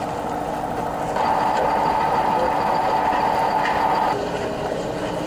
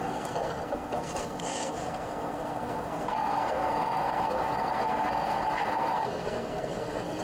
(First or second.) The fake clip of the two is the second